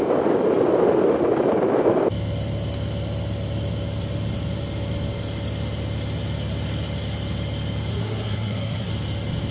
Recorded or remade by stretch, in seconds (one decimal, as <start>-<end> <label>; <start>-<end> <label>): 0.0-7.9 recorded; 7.9-8.9 remade; 8.9-9.5 recorded